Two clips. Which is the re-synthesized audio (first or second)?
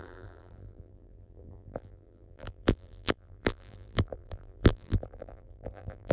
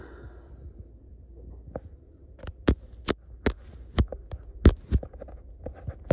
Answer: first